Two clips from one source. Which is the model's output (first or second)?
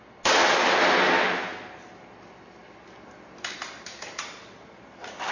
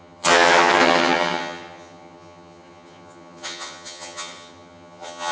second